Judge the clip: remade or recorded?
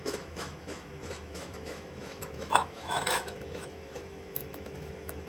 remade